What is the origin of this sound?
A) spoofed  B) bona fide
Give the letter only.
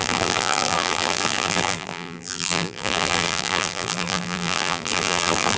A